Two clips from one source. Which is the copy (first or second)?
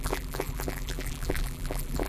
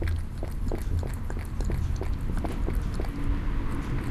first